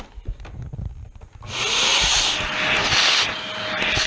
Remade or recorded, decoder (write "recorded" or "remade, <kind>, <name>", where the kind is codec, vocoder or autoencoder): recorded